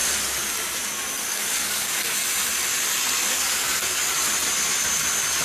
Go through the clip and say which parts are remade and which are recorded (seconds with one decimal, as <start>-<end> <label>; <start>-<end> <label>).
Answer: 0.0-1.2 recorded; 1.2-2.2 remade; 2.2-3.3 recorded; 3.3-4.0 remade; 4.0-5.4 recorded